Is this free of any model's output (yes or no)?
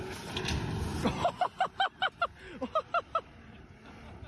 yes